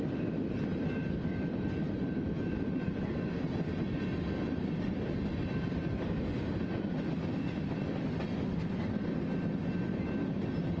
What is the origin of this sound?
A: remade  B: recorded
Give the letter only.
B